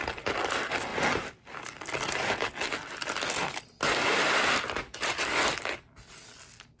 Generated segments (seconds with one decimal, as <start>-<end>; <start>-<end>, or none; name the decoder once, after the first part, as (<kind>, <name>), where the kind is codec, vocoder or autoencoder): none